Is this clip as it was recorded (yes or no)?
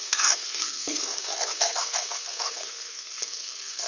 no